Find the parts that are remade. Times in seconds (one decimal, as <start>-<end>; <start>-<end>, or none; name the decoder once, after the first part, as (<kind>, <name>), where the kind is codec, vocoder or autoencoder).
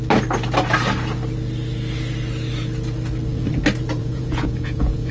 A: 4.0-5.1 (vocoder, Vocos)